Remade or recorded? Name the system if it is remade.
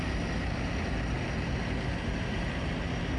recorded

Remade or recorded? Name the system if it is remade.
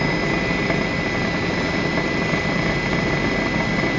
recorded